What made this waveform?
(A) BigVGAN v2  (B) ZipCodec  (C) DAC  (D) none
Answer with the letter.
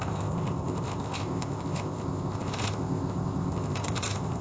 B